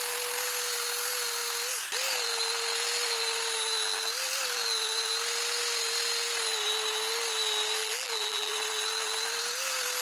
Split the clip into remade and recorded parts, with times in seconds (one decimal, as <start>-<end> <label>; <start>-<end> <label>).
0.0-7.8 recorded; 7.8-8.5 remade; 8.5-10.0 recorded